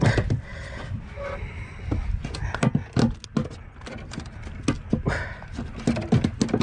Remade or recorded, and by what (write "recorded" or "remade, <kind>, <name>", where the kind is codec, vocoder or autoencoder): recorded